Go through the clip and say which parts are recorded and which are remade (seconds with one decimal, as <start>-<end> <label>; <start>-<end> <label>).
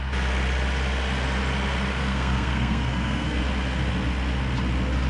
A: 0.0-2.0 recorded; 2.0-3.4 remade; 3.4-5.1 recorded